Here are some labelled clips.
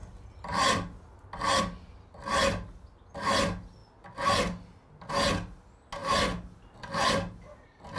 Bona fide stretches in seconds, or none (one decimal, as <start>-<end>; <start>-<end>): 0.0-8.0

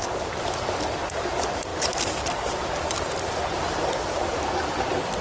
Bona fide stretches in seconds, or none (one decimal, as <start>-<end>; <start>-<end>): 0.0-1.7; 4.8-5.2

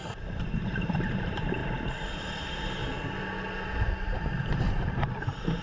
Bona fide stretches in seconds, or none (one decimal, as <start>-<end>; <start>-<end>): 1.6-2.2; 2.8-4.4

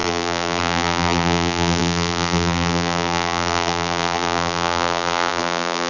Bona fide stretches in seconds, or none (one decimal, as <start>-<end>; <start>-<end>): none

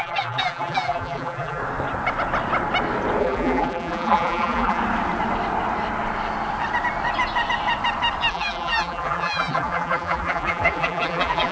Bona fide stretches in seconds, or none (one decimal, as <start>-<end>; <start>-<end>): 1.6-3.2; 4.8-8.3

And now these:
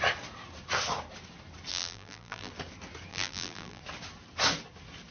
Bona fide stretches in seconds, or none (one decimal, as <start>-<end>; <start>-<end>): 0.0-1.7; 2.5-3.1; 3.8-5.1

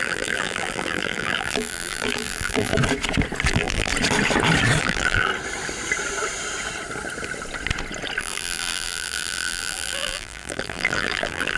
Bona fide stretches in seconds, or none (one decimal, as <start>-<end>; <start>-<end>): 2.7-3.5; 3.9-4.8; 5.3-8.2